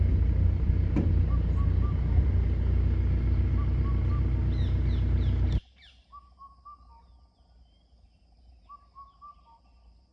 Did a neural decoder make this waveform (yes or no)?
no